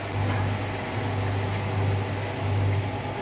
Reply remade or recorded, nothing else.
recorded